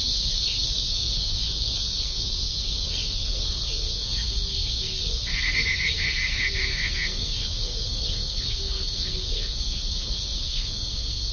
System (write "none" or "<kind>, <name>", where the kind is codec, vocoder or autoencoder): codec, SNAC